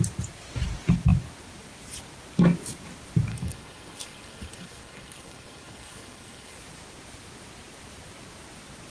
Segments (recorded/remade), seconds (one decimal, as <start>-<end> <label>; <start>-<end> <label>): 0.0-3.3 recorded; 3.3-6.6 remade; 6.6-8.9 recorded